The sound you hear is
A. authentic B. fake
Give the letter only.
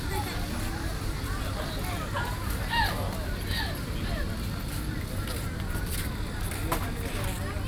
A